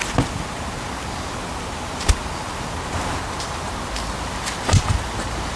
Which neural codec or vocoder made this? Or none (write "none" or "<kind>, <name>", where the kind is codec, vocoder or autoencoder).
none